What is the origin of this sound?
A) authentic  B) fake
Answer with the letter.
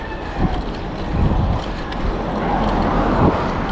A